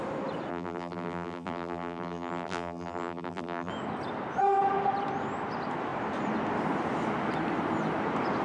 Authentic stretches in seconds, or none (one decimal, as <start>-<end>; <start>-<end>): 0.0-0.5; 3.7-8.4